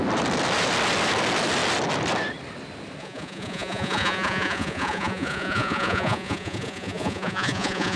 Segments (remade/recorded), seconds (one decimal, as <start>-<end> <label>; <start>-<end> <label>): 0.0-3.0 recorded; 3.0-8.0 remade